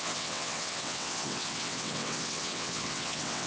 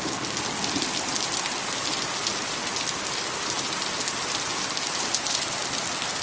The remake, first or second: first